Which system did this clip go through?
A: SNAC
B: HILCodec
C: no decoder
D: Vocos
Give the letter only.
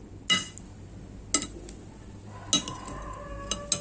C